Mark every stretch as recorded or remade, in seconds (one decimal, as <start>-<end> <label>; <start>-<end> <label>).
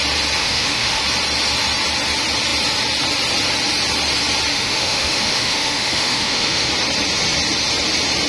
0.0-0.4 recorded; 0.4-1.0 remade; 1.0-4.5 recorded; 4.5-6.7 remade; 6.7-8.3 recorded